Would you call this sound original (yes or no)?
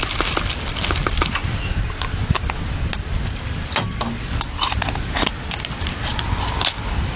yes